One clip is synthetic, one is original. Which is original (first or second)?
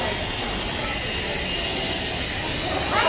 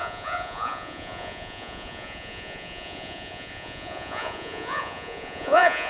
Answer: first